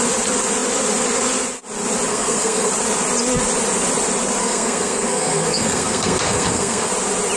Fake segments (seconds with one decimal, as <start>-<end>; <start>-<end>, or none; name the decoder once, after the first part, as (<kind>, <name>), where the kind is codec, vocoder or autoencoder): 2.1-2.7 (codec, SNAC); 4.4-6.9